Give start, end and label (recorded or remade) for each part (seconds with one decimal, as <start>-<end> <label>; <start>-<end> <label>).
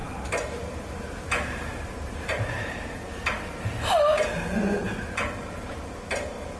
0.0-4.0 remade; 4.0-4.8 recorded; 4.8-5.7 remade; 5.7-6.6 recorded